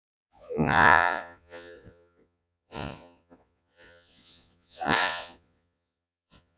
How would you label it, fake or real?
fake